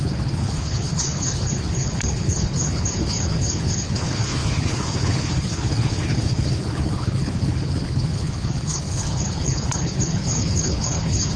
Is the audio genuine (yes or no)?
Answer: no